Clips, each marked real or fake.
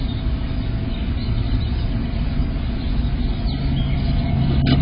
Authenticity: real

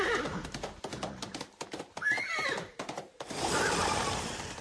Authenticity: real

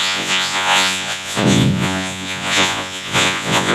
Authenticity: fake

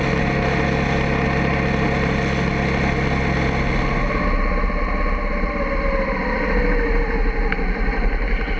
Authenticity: real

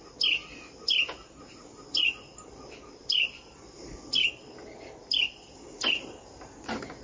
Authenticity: real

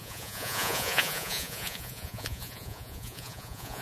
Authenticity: fake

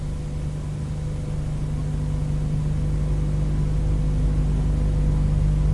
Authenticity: real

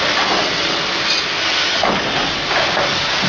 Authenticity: real